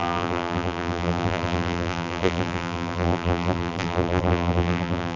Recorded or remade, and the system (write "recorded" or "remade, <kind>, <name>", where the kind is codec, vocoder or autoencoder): remade, vocoder, BigVGAN v2